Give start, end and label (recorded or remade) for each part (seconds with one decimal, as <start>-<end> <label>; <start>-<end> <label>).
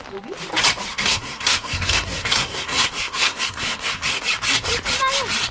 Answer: 0.0-0.9 recorded; 0.9-4.2 remade; 4.2-5.5 recorded